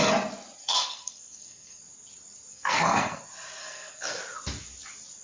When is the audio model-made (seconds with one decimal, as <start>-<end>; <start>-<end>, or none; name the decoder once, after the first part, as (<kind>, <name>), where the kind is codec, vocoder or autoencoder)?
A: 0.6-1.8 (codec, SNAC); 2.5-3.2; 3.6-4.2